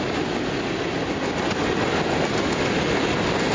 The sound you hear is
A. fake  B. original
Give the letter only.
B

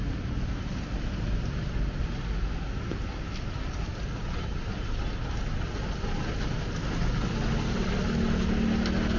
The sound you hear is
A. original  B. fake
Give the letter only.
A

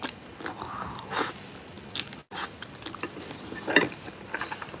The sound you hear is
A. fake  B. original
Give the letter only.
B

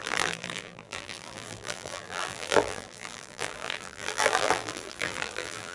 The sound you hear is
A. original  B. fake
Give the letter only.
B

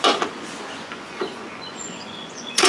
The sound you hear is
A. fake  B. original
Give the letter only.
A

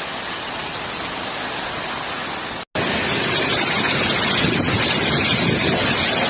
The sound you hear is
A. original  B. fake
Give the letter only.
A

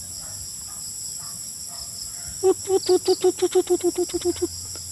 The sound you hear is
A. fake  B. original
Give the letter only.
B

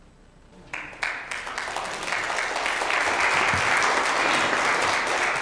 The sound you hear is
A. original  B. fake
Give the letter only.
A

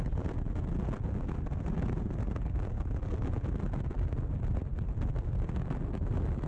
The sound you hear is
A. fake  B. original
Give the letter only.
A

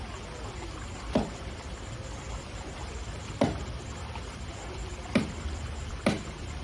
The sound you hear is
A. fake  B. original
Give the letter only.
A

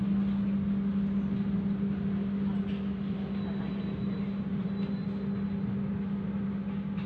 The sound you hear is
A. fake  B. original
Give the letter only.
B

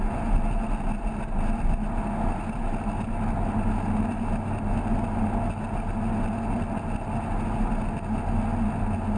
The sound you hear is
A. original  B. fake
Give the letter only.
A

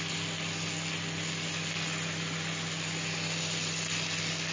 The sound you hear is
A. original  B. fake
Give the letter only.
A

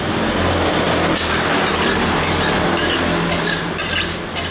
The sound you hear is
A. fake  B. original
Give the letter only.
B